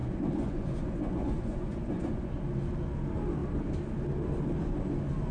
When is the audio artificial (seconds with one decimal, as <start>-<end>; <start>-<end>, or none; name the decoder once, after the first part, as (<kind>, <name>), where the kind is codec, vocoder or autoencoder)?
0.0-2.3 (vocoder, Vocos)